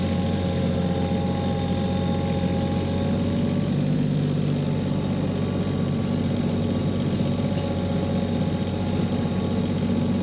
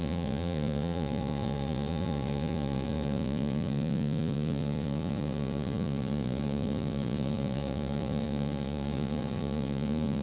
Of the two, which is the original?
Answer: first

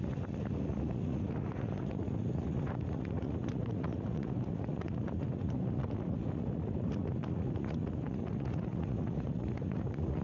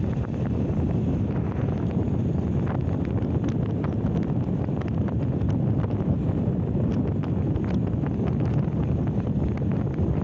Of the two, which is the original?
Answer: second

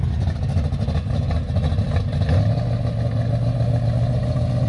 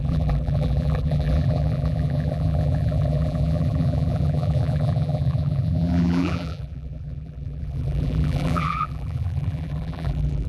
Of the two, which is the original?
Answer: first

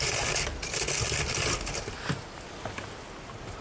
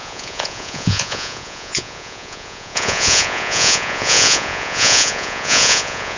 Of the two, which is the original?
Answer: first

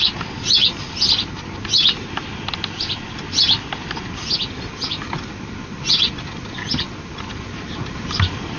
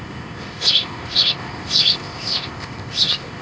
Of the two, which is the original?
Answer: first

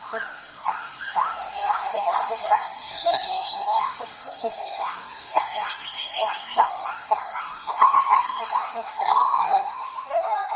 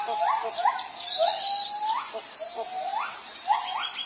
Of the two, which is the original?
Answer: second